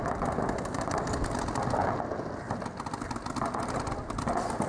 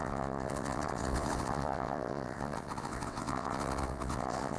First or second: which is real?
first